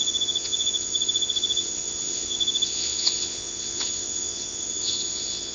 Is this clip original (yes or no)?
no